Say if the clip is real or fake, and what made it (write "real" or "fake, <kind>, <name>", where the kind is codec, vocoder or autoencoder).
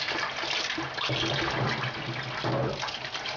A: real